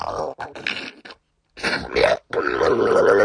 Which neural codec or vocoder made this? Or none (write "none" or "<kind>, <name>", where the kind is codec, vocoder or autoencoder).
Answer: none